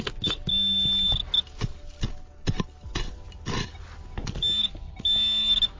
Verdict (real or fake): real